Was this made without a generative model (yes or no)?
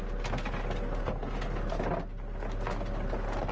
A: yes